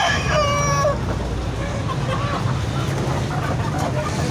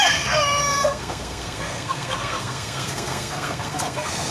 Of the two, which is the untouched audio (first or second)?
first